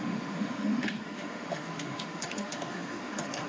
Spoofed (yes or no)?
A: yes